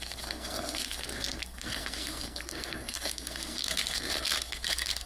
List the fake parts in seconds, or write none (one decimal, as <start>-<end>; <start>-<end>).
0.0-5.1